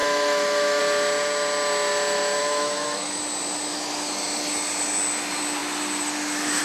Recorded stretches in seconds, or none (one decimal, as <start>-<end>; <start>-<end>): 0.8-2.4; 3.2-6.6